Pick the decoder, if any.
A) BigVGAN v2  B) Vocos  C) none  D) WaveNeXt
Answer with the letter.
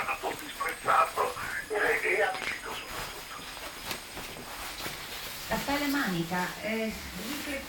C